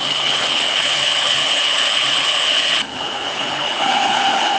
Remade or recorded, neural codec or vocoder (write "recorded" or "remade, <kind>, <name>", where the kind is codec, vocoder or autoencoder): remade, codec, HILCodec